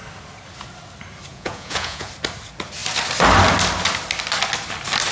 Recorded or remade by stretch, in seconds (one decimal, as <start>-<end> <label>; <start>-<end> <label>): 0.0-1.3 recorded; 1.3-2.1 remade; 2.1-5.1 recorded